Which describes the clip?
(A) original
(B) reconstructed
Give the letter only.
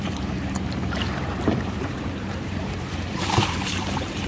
B